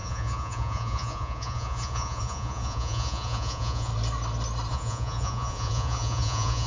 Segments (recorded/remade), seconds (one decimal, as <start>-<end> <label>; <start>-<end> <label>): 0.0-3.9 remade; 3.9-4.7 recorded; 4.7-6.7 remade